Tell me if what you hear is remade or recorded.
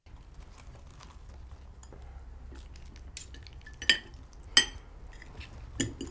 recorded